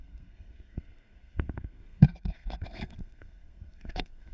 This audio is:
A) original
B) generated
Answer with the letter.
B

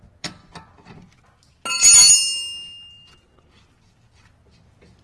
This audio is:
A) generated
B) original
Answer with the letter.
B